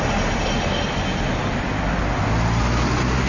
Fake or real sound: real